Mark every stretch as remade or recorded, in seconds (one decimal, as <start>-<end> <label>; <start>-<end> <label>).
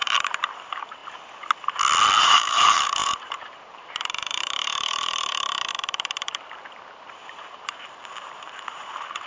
0.0-1.0 remade; 1.0-2.2 recorded; 2.2-9.3 remade